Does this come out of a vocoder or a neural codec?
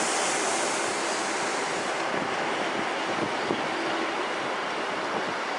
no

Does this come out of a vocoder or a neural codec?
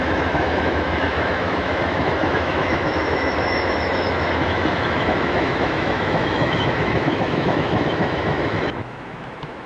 yes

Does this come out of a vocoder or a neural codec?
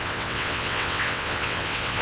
yes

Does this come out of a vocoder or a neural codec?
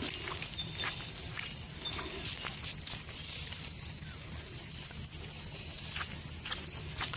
no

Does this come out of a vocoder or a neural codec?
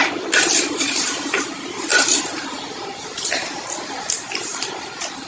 no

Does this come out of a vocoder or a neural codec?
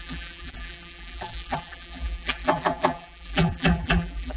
yes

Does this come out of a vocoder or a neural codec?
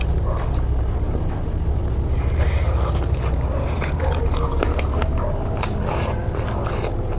no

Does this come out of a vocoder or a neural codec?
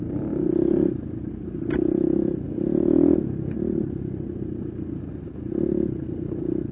no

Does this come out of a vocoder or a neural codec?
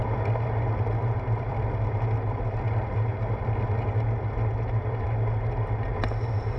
no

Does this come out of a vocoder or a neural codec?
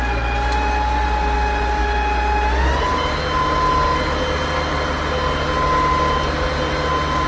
no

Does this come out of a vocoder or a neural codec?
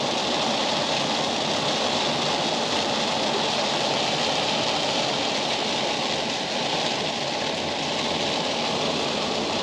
no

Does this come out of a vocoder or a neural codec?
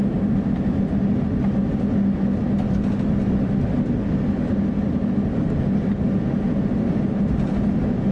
no